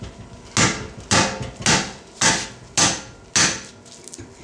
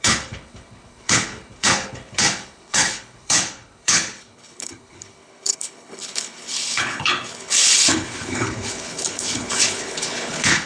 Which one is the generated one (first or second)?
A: second